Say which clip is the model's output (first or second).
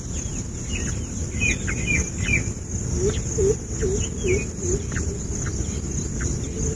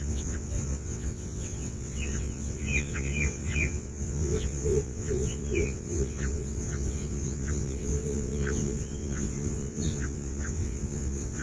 second